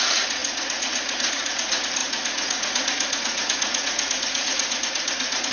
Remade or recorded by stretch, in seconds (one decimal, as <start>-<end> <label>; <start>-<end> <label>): 0.0-5.5 remade

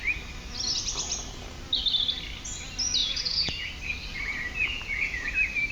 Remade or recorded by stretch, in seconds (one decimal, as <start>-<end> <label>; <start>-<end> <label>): 0.0-3.0 recorded; 3.0-3.7 remade; 3.7-4.6 recorded; 4.6-5.3 remade; 5.3-5.7 recorded